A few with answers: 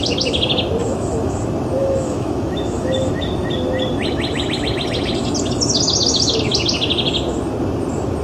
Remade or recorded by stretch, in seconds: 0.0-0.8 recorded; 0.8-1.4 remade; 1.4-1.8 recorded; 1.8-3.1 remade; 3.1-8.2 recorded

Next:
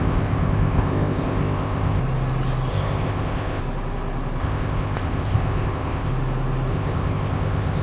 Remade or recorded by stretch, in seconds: 0.0-2.0 remade; 2.0-2.7 recorded; 2.7-3.6 remade; 3.6-4.4 recorded; 4.4-6.1 remade; 6.1-6.7 recorded; 6.7-7.8 remade

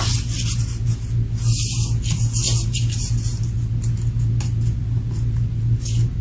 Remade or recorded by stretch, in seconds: 0.0-6.2 recorded